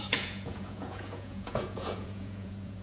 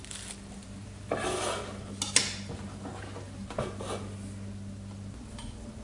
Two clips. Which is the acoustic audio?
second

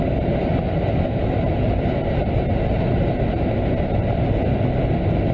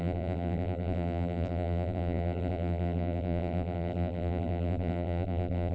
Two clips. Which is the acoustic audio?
first